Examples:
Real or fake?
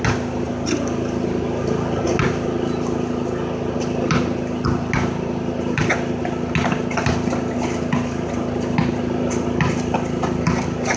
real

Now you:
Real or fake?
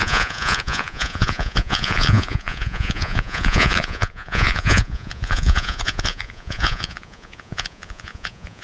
fake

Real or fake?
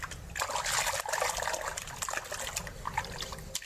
real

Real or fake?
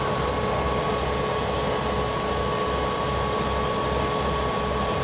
real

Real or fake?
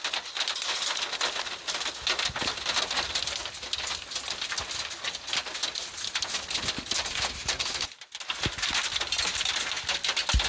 real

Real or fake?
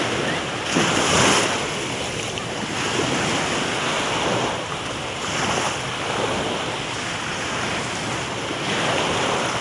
real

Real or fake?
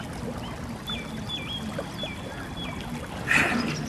real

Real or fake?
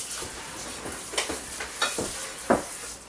real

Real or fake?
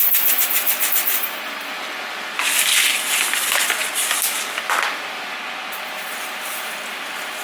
real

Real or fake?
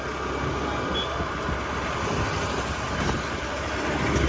real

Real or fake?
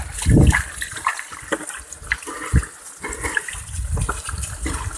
real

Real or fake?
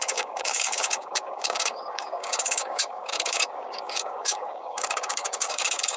fake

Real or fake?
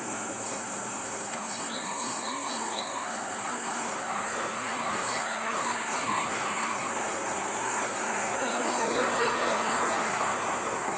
fake